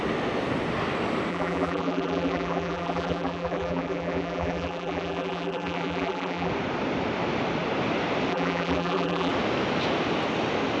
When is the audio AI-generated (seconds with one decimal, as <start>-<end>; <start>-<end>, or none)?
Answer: 1.3-6.5; 8.3-9.3